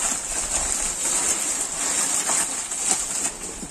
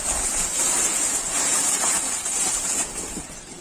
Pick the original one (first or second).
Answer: first